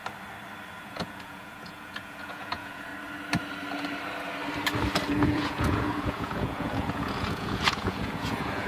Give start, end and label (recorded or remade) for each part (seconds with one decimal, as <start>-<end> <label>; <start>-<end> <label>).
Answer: 0.0-0.8 recorded; 0.8-2.9 remade; 2.9-5.1 recorded; 5.1-8.7 remade